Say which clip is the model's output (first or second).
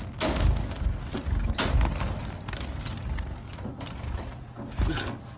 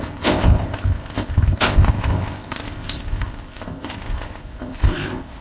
second